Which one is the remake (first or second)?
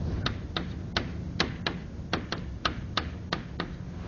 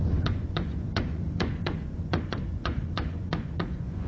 second